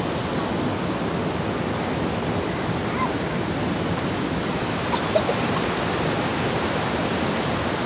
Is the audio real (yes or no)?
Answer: yes